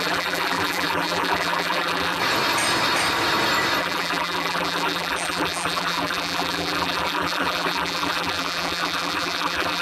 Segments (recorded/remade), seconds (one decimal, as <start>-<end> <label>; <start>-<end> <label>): 0.0-2.2 remade; 2.2-3.8 recorded; 3.8-9.8 remade